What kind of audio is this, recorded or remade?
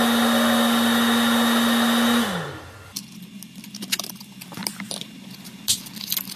recorded